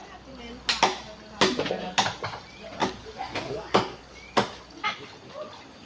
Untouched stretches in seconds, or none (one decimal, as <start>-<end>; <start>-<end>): 0.0-2.8; 4.0-5.9